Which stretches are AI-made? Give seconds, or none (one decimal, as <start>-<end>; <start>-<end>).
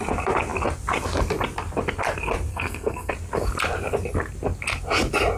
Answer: 2.5-3.1